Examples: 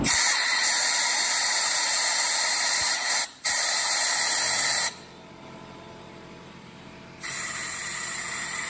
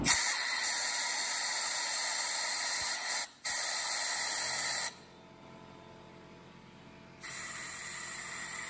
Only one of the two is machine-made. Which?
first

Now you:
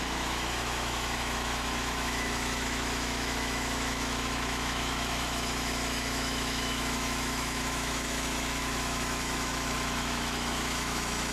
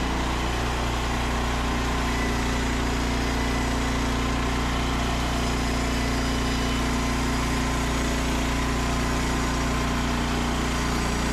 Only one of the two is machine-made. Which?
first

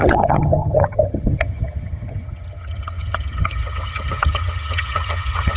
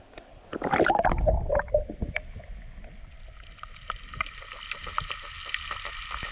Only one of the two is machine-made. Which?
first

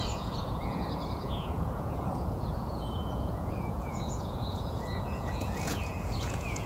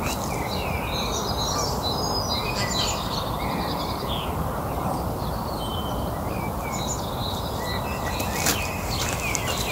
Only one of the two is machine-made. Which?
first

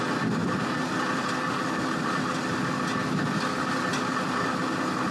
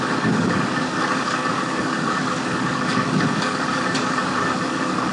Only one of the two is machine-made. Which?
second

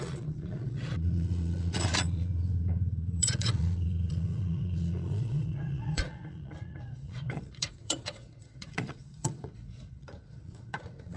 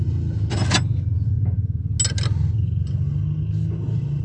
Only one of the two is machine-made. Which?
first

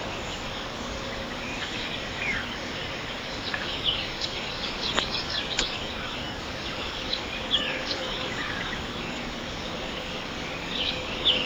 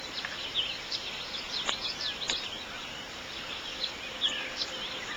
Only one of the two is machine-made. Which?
first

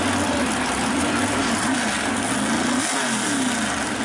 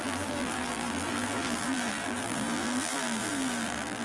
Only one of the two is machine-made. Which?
second